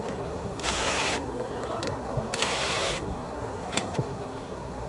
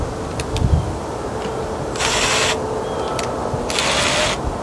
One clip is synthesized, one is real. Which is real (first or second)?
second